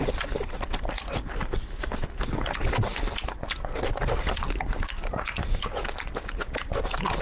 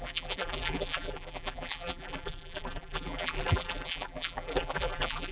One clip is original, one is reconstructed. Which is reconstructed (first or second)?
second